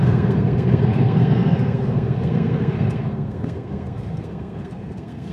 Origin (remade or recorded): remade